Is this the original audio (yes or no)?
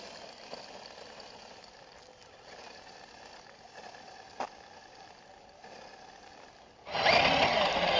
yes